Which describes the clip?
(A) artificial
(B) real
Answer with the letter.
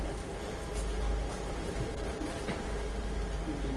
B